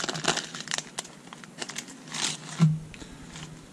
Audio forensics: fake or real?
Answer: real